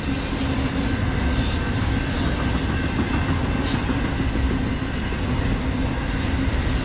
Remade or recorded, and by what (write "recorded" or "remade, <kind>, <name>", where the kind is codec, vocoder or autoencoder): recorded